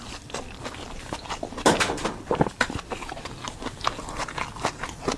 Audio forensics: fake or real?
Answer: fake